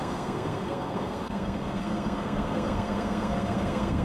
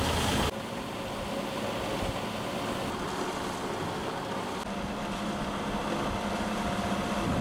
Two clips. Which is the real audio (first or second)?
second